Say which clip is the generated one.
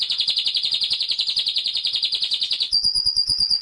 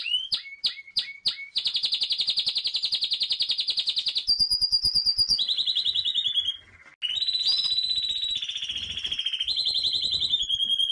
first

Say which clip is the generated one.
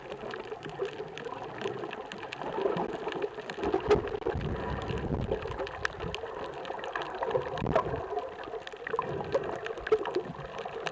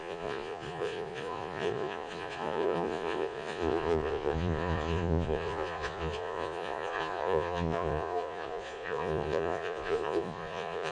second